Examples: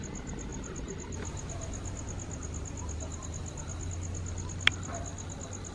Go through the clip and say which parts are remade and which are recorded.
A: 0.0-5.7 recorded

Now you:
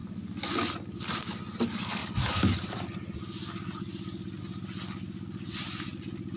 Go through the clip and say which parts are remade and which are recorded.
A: 0.0-6.4 recorded

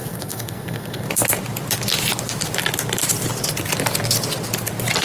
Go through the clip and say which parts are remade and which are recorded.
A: 0.0-1.1 remade; 1.1-5.0 recorded

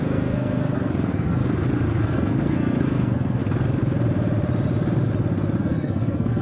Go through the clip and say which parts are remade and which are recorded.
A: 0.0-1.4 remade; 1.4-2.0 recorded; 2.0-3.4 remade; 3.4-5.6 recorded; 5.6-6.4 remade

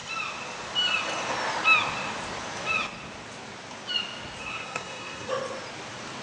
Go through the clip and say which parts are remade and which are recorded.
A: 0.0-4.4 recorded; 4.4-5.3 remade; 5.3-6.2 recorded

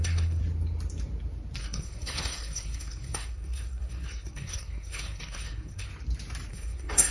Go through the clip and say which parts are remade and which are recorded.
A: 0.0-0.4 remade; 0.4-1.6 recorded; 1.6-5.9 remade; 5.9-6.5 recorded; 6.5-7.1 remade